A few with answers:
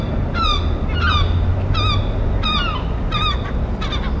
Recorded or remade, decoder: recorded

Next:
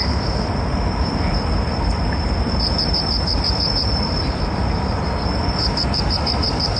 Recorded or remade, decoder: remade, vocoder, BigVGAN v2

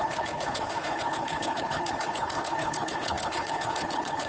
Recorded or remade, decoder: remade, codec, HILCodec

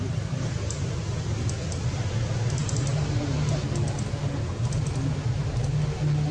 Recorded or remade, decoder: recorded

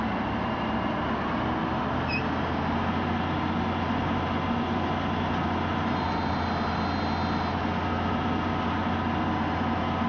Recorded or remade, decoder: recorded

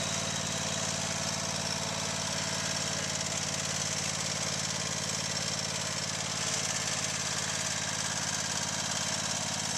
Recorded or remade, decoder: recorded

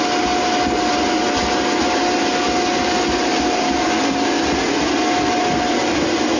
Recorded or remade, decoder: recorded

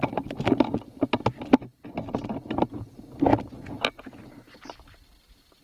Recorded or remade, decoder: recorded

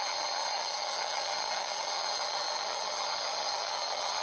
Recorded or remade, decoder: remade, vocoder, HiFi-GAN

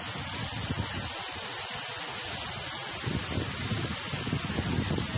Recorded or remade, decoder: recorded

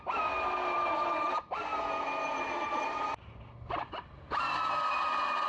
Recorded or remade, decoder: recorded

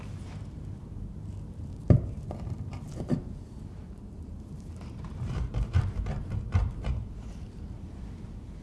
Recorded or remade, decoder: remade, vocoder, BigVGAN v2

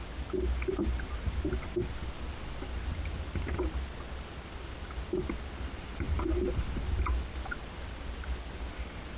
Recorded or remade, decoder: recorded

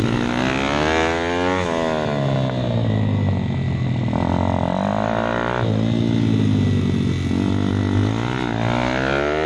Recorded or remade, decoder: recorded